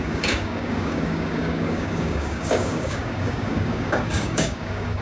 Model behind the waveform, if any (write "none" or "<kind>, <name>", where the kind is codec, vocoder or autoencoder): codec, DAC